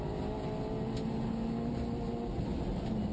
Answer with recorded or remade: recorded